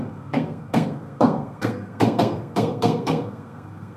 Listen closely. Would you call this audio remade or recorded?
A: remade